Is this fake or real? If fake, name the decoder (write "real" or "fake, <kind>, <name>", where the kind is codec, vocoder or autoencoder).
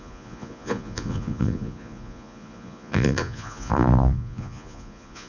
fake, vocoder, Vocos